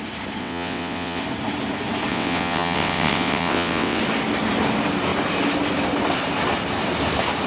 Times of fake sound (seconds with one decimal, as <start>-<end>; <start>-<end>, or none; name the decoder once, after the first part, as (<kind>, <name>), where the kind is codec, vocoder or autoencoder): 0.4-1.2 (vocoder, WaveNeXt); 2.1-4.0

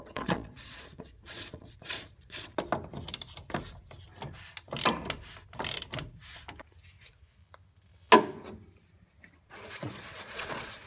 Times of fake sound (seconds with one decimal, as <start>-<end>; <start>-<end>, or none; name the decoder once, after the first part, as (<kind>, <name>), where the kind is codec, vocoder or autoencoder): 0.0-2.5 (vocoder, Vocos); 7.0-7.4; 9.4-10.9